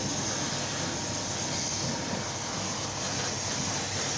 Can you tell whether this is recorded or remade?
recorded